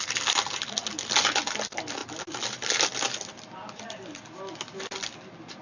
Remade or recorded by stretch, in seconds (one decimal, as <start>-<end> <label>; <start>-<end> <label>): 0.0-5.6 recorded